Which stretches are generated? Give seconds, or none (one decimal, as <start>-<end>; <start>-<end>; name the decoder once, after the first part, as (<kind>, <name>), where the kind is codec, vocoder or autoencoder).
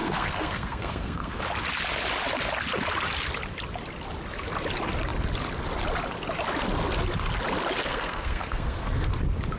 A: 0.0-1.4 (codec, SNAC); 7.8-9.1